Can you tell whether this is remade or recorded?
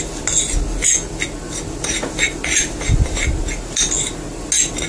recorded